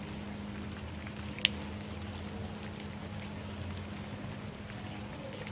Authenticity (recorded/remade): recorded